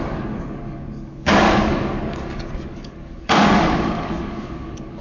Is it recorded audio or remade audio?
remade